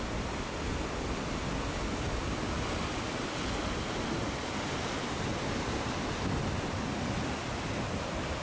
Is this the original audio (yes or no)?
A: yes